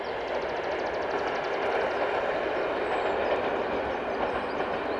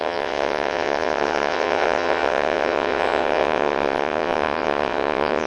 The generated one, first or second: second